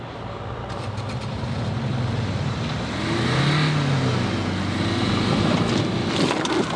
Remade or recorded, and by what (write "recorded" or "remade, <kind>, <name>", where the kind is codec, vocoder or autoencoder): recorded